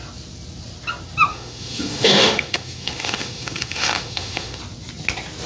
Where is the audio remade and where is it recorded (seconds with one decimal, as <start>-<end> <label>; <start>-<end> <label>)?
0.0-1.3 recorded; 1.3-4.6 remade; 4.6-5.5 recorded